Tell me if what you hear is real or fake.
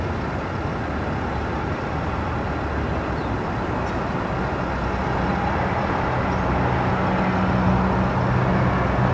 real